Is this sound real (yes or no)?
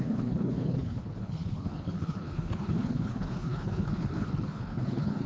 no